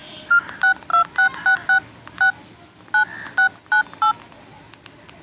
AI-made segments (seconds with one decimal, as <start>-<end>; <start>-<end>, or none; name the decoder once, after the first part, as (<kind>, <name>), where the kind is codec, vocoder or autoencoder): none